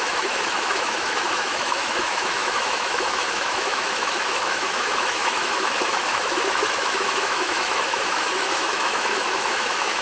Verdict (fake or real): fake